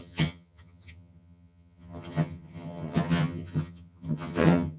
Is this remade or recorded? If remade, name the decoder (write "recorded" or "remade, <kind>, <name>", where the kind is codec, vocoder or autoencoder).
remade, vocoder, HiFi-GAN